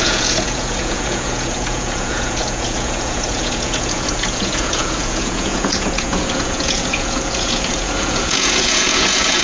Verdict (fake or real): fake